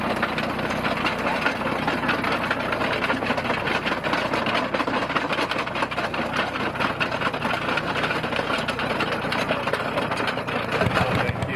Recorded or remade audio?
recorded